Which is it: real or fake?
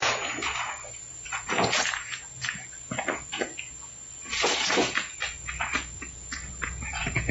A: fake